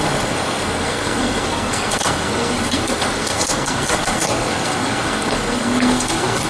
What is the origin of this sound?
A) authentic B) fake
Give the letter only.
B